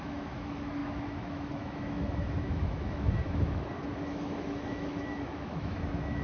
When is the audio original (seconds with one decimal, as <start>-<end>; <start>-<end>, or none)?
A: none

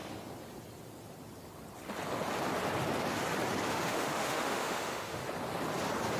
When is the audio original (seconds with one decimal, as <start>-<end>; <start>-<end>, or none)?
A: 0.0-3.7; 5.2-6.2

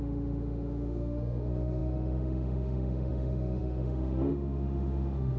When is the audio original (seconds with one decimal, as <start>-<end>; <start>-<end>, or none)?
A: none

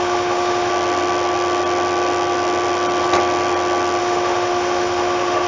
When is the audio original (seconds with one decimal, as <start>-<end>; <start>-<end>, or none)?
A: 0.7-4.0